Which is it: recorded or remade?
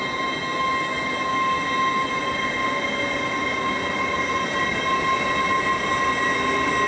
recorded